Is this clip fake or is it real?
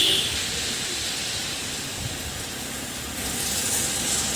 real